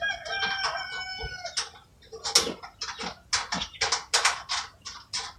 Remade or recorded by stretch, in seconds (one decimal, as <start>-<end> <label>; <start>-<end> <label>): 0.0-5.4 recorded